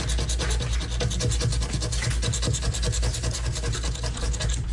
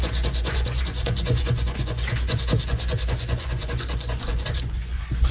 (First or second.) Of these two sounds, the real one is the first